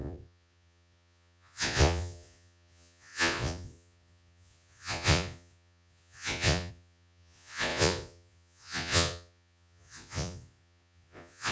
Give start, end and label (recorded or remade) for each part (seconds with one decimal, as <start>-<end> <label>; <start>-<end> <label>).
0.0-11.5 remade